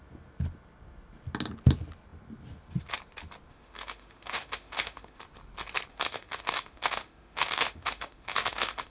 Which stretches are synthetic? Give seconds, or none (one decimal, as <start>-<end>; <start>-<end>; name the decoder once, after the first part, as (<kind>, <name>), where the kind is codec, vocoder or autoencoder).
3.5-5.2 (autoencoder, DAC-VAE); 5.9-8.9